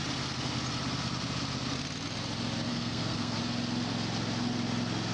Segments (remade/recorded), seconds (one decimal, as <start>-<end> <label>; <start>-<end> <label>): 0.0-2.7 recorded; 2.7-3.4 remade; 3.4-5.1 recorded